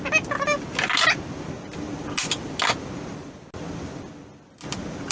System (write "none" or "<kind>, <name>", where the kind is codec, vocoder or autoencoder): none